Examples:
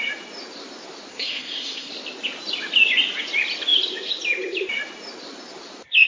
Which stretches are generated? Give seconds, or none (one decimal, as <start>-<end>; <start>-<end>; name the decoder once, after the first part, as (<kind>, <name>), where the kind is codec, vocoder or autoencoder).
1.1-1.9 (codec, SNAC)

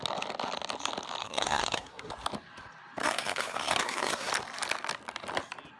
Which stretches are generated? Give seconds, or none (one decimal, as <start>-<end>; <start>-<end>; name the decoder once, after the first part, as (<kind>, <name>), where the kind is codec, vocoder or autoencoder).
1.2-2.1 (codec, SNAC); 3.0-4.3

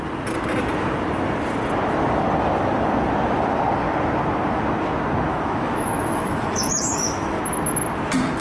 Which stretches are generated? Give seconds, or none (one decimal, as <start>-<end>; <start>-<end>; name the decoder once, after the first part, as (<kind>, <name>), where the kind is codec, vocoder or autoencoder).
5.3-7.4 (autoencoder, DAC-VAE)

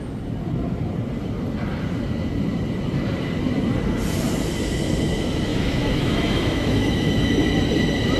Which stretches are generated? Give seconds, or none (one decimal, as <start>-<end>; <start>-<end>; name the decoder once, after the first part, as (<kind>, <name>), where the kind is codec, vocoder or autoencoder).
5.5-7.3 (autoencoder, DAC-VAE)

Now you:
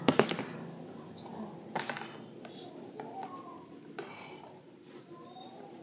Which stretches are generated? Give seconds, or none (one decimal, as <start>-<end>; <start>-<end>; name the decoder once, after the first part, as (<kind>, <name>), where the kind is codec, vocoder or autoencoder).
none

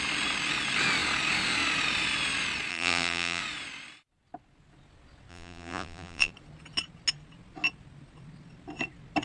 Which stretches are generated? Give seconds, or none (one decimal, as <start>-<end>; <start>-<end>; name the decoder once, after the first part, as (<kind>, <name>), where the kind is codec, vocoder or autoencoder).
2.7-3.4 (vocoder, BigVGAN v2); 5.3-6.3